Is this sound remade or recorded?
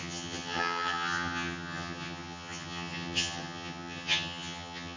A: remade